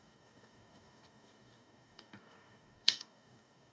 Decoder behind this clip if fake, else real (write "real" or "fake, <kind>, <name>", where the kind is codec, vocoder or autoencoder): fake, codec, DAC